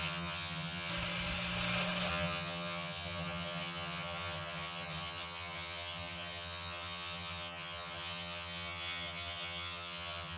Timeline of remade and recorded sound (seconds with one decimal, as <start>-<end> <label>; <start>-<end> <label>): 0.0-0.9 remade; 0.9-2.1 recorded; 2.1-10.4 remade